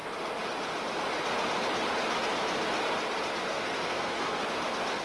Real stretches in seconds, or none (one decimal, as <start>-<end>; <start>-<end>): 0.0-3.5; 4.4-5.0